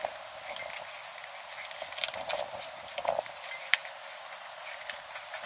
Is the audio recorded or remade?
recorded